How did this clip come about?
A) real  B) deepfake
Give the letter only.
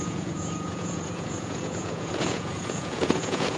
B